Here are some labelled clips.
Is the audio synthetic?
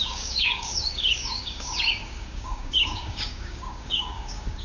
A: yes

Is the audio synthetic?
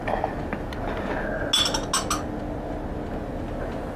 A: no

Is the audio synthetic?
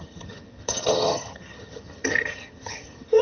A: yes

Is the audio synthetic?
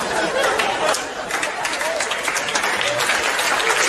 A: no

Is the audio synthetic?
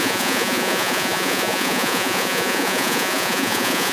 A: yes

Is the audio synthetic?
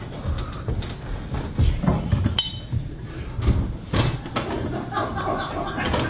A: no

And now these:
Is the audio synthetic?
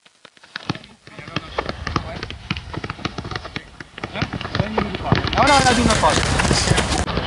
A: no